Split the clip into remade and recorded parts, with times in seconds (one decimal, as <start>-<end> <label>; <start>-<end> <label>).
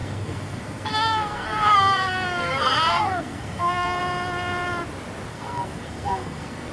0.0-4.0 remade; 4.0-5.3 recorded; 5.3-6.7 remade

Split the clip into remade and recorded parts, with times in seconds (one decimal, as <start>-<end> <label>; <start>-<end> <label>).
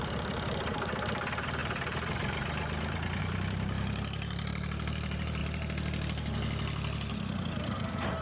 0.0-5.4 remade; 5.4-7.4 recorded; 7.4-8.2 remade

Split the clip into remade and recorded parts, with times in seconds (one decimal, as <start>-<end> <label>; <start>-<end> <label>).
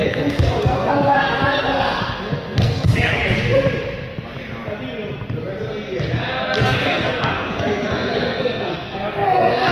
0.0-3.2 remade; 3.2-6.6 recorded; 6.6-9.7 remade